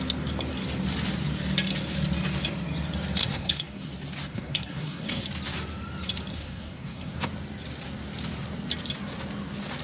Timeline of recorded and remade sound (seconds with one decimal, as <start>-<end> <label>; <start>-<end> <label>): 0.0-3.2 recorded; 3.2-3.9 remade; 3.9-4.3 recorded; 4.3-5.2 remade; 5.2-6.3 recorded; 6.3-7.3 remade; 7.3-9.8 recorded